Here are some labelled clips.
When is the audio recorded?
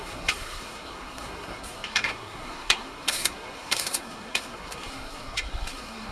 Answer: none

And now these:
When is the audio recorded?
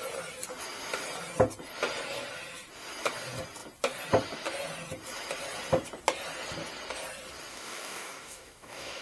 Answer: 0.0-7.5